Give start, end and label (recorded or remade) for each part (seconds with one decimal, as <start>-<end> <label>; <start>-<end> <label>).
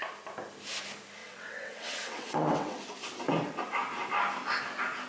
0.0-1.2 recorded; 1.2-2.8 remade; 2.8-5.1 recorded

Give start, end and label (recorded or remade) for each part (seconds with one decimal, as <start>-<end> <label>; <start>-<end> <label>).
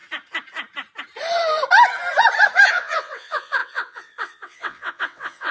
0.0-2.7 recorded; 2.7-5.5 remade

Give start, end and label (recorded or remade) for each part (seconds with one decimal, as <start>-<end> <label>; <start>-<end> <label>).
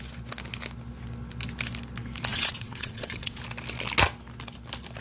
0.0-2.3 recorded; 2.3-3.4 remade; 3.4-5.0 recorded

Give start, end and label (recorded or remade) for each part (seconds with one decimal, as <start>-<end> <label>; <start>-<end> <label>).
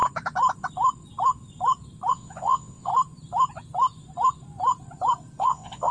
0.0-2.1 recorded; 2.1-2.9 remade; 2.9-5.4 recorded; 5.4-5.9 remade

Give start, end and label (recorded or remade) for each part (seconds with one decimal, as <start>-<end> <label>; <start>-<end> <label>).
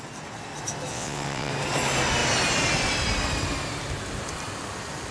0.0-0.9 recorded; 0.9-1.5 remade; 1.5-5.1 recorded